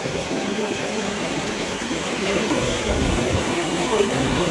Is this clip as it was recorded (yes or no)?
no